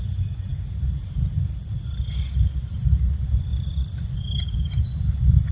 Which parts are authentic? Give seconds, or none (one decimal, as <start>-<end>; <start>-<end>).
0.0-5.5